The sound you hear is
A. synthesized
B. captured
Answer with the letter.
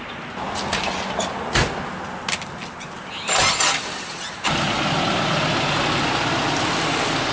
B